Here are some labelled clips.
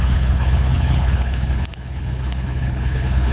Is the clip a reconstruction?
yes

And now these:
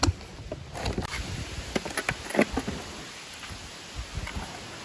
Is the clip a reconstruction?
no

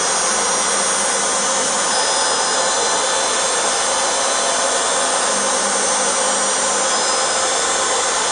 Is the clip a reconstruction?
no